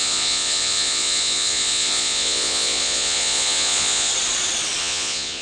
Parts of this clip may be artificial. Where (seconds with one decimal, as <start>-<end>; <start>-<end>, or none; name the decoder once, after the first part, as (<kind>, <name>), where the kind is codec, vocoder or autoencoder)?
0.0-4.1 (vocoder, Vocos); 4.8-5.4